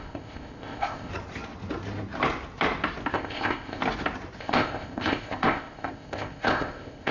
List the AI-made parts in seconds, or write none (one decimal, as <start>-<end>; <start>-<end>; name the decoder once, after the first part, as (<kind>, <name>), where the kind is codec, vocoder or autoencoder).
0.0-1.1 (codec, ZipCodec); 3.1-3.8; 4.4-7.1